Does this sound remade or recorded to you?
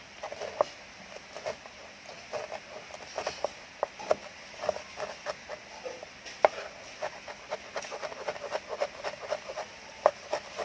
recorded